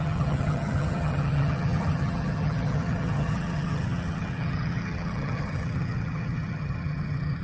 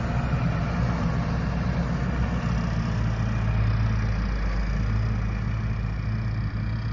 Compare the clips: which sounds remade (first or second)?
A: first